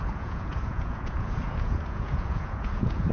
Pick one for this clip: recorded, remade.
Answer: remade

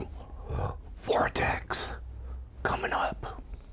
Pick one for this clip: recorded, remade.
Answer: recorded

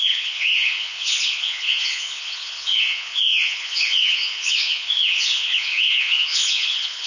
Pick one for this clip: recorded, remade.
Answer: remade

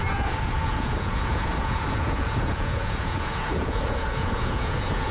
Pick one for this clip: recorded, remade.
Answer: remade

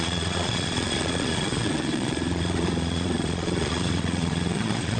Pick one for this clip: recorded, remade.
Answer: remade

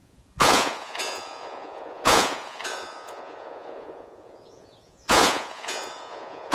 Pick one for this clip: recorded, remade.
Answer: remade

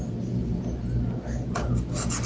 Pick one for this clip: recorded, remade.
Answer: recorded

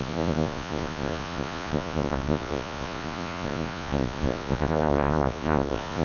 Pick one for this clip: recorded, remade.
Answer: remade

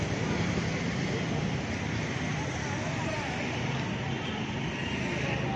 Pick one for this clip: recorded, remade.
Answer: recorded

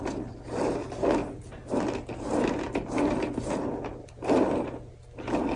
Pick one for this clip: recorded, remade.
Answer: recorded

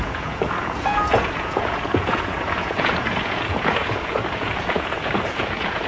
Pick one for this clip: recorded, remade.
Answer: remade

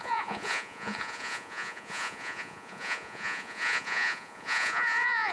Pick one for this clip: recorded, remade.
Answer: remade